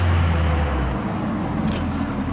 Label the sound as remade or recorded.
recorded